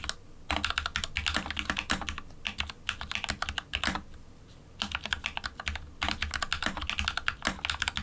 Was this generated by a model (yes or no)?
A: no